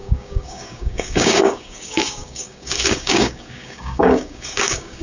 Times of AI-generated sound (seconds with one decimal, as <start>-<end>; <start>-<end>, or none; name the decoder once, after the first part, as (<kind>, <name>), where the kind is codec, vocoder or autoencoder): 0.0-5.0 (codec, DAC)